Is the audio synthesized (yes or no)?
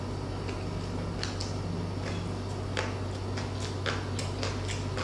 no